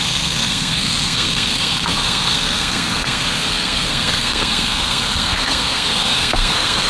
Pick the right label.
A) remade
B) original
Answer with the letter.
A